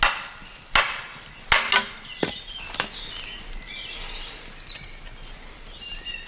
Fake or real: real